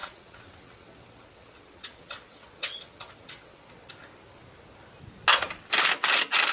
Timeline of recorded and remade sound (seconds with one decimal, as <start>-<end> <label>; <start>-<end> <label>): 0.0-3.9 remade; 3.9-6.5 recorded